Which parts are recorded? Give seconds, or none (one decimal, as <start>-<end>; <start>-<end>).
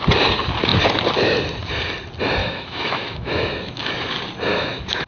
0.0-2.4; 3.9-4.5